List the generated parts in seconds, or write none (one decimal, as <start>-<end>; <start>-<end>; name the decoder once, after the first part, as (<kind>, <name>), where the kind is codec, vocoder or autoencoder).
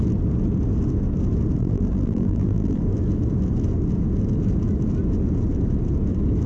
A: 1.6-2.8 (vocoder, BigVGAN v2)